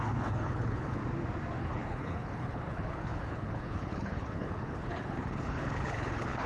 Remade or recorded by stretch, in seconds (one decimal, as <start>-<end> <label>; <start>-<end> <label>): 0.0-1.0 remade; 1.0-1.6 recorded; 1.6-6.5 remade